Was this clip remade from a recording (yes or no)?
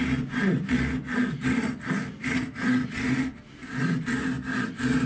no